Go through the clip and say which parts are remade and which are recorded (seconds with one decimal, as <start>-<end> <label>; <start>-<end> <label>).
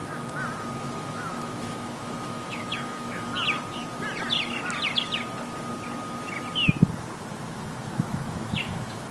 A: 0.0-0.8 recorded; 0.8-3.3 remade; 3.3-7.3 recorded; 7.3-9.1 remade